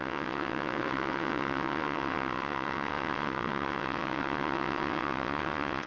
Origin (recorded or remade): remade